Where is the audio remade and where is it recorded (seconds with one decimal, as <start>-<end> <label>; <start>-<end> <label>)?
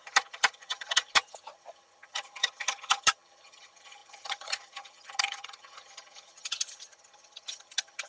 0.0-8.1 remade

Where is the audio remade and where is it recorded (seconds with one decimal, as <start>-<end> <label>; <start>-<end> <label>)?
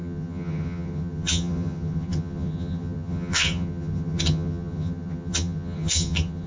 0.0-6.5 remade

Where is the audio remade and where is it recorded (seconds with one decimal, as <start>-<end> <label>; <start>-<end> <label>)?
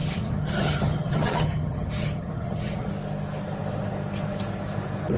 0.0-2.9 remade; 2.9-5.2 recorded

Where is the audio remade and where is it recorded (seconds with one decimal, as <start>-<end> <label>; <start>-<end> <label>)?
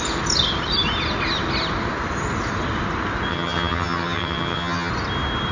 0.0-3.3 recorded; 3.3-4.9 remade; 4.9-5.5 recorded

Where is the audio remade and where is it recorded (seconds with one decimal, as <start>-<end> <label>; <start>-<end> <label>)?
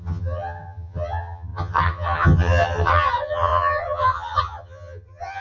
0.0-5.4 remade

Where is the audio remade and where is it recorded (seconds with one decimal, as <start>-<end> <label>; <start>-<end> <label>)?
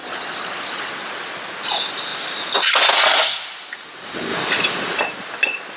0.0-5.8 recorded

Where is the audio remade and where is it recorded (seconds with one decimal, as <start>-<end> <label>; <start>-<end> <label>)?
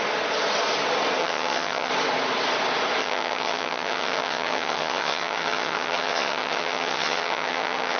0.0-1.2 recorded; 1.2-1.9 remade; 1.9-3.0 recorded; 3.0-8.0 remade